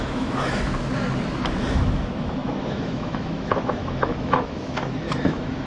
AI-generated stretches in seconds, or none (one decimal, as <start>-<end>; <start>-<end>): 0.0-0.7; 1.7-5.7